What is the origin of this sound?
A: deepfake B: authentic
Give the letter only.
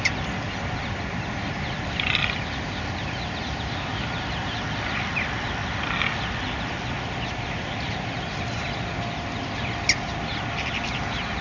B